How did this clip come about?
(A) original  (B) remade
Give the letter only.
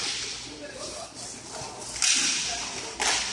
A